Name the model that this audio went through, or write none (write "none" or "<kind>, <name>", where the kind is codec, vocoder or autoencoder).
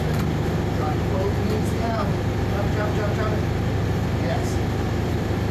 none